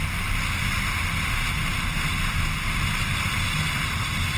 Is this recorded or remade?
recorded